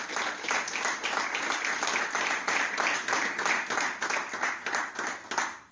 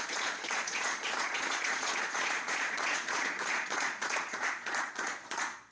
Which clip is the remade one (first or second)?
second